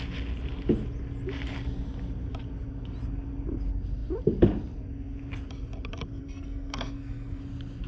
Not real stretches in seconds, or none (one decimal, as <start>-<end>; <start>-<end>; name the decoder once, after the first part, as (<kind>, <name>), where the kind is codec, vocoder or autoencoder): 6.2-7.4 (codec, SNAC)